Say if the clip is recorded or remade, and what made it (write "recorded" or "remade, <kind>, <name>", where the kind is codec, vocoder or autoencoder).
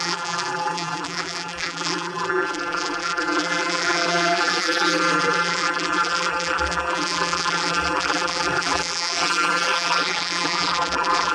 remade, vocoder, BigVGAN v2